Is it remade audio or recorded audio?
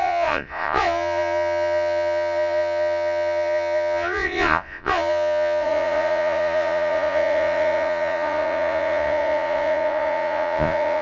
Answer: remade